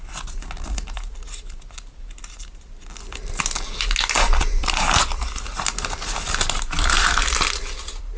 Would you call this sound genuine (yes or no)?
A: yes